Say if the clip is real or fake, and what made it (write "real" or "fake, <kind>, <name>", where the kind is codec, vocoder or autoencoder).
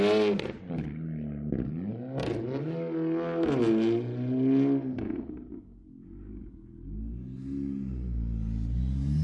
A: real